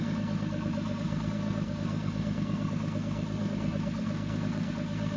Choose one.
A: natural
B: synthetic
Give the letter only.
B